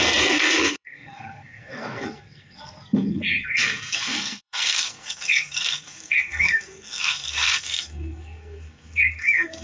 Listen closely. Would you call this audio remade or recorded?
remade